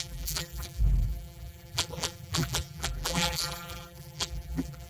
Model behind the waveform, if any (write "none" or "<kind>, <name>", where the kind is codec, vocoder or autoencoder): vocoder, BigVGAN v2